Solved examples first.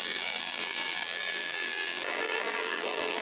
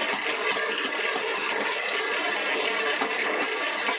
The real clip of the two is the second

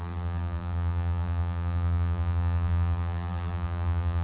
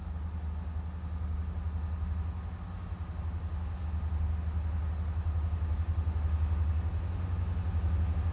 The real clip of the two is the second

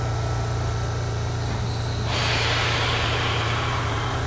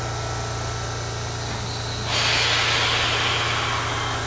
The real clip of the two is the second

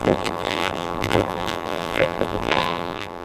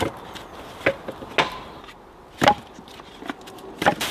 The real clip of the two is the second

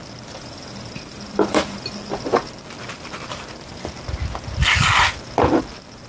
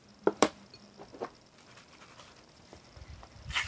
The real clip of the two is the second